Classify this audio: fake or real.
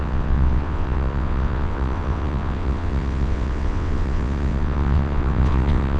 fake